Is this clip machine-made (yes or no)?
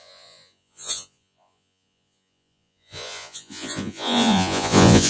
yes